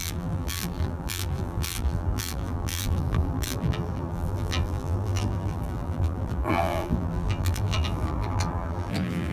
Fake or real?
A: fake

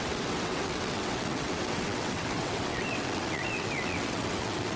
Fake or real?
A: fake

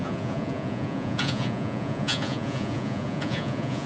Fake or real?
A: fake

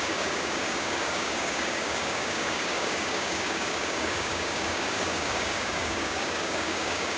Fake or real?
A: fake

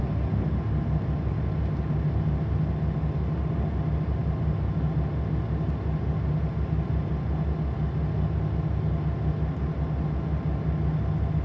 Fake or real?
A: real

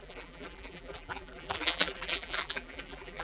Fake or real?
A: fake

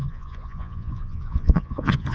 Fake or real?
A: fake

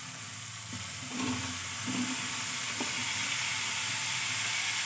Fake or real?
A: real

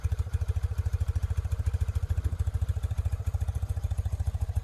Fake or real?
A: fake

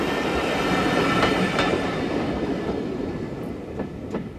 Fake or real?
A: real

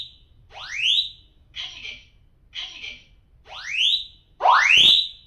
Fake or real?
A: real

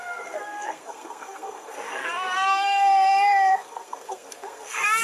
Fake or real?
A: fake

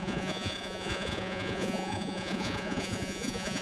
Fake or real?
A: fake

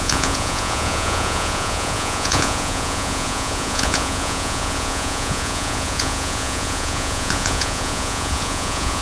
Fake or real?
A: fake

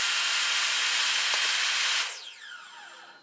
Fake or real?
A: real